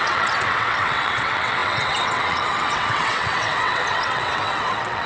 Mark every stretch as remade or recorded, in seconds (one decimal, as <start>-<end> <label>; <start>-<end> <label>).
0.0-5.1 remade